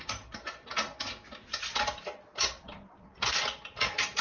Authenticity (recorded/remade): recorded